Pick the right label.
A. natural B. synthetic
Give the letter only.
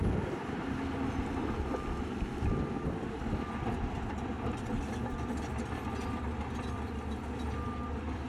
A